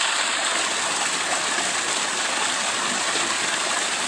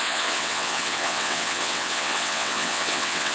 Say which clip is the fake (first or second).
second